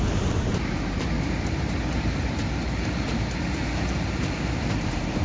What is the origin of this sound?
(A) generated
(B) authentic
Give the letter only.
A